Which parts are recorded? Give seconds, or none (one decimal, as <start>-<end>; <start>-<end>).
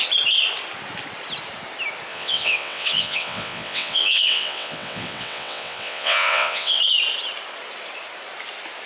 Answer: 0.0-2.1; 6.8-8.9